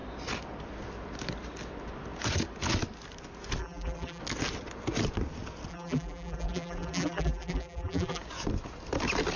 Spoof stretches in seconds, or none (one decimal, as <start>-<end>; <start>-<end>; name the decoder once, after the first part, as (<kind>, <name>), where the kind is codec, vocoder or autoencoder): 3.6-4.2 (vocoder, BigVGAN v2); 5.7-8.2

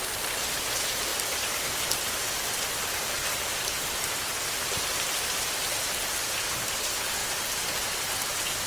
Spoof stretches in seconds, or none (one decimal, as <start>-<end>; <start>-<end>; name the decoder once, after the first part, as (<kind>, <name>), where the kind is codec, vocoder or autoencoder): 1.1-4.0 (vocoder, BigVGAN v2); 4.4-5.8

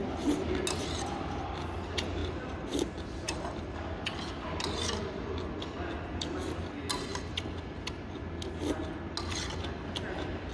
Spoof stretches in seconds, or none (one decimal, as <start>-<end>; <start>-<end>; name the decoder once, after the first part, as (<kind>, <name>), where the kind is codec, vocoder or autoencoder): 2.2-3.6 (vocoder, BigVGAN v2); 7.1-7.6

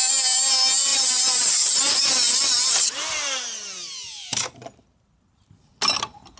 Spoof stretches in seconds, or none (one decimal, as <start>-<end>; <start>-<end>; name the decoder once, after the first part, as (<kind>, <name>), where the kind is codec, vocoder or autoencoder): 0.0-5.7 (vocoder, BigVGAN v2)

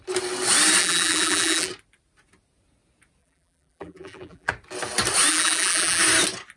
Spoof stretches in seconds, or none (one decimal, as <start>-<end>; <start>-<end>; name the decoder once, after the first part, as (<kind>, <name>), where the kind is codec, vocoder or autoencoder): 0.8-1.7 (vocoder, BigVGAN v2); 3.2-4.5; 5.3-6.0

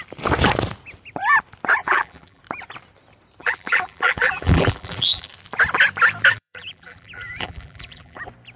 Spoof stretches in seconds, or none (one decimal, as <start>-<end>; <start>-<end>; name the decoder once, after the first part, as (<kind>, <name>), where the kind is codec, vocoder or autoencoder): 1.8-2.4 (vocoder, BigVGAN v2); 3.4-5.3; 6.3-8.2

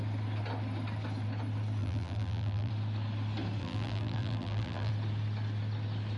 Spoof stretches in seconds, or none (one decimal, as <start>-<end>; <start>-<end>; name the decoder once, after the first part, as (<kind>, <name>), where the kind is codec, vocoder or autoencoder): 1.8-2.7 (vocoder, BigVGAN v2); 3.6-4.9

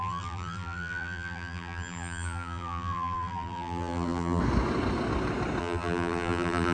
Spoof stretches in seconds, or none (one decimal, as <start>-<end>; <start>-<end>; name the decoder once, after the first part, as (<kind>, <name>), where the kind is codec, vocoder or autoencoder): 0.0-4.4 (vocoder, BigVGAN v2); 5.6-6.7